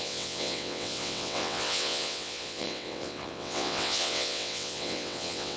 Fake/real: fake